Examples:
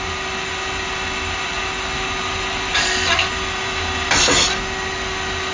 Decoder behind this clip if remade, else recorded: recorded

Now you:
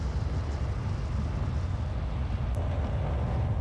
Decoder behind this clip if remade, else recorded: recorded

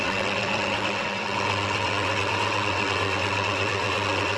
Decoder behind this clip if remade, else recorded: remade, vocoder, WaveNeXt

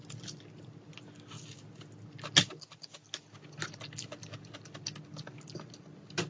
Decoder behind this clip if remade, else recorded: recorded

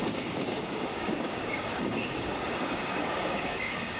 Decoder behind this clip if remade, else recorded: remade, codec, DAC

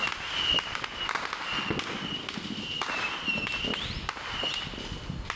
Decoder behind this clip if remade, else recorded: recorded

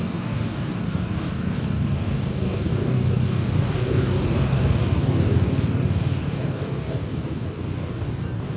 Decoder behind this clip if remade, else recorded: remade, codec, DAC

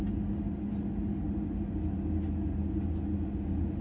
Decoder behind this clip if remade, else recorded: recorded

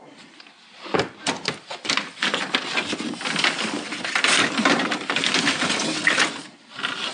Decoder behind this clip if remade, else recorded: recorded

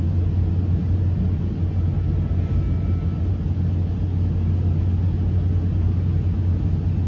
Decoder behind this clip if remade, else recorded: recorded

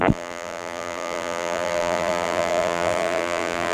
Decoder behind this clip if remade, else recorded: remade, vocoder, BigVGAN v2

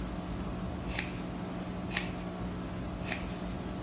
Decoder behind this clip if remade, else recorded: recorded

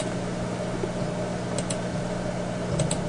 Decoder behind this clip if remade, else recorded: recorded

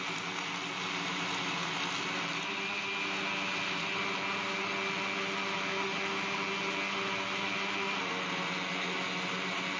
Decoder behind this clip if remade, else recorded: recorded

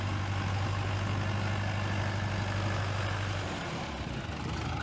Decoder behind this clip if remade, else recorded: recorded